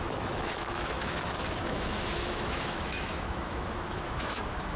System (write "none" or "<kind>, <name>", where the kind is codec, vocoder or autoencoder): autoencoder, DAC-VAE